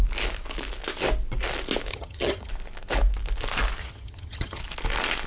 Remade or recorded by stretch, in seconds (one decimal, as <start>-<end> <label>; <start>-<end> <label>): 0.0-1.9 recorded; 1.9-2.5 remade; 2.5-3.8 recorded; 3.8-4.6 remade; 4.6-5.3 recorded